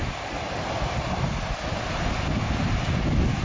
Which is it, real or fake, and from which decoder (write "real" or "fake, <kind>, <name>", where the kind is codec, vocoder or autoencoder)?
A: real